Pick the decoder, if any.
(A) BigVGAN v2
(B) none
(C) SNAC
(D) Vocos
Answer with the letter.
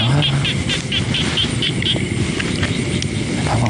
B